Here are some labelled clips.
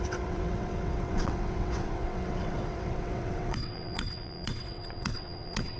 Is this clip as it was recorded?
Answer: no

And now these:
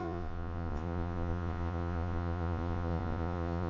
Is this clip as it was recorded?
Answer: no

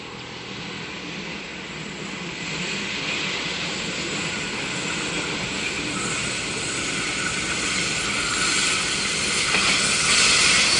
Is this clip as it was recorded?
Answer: yes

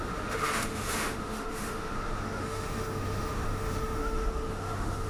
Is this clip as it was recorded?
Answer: no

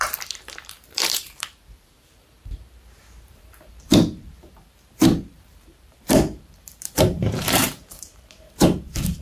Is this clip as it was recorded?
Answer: no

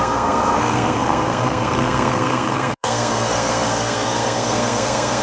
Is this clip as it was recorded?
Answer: no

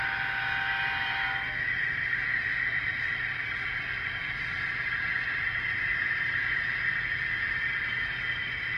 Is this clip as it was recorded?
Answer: yes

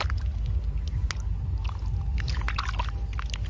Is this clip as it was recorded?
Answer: yes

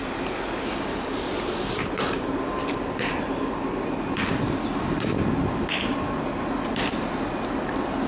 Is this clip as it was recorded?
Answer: yes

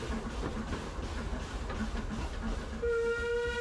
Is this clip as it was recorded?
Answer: yes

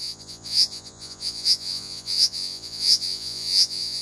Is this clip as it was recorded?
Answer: no